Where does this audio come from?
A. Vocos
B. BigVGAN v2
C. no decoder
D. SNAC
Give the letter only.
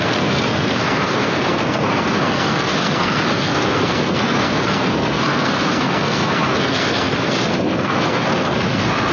D